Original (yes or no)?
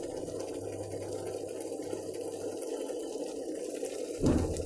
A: yes